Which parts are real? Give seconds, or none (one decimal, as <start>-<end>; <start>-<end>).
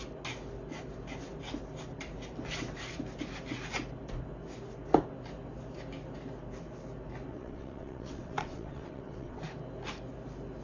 0.0-7.3; 9.4-10.6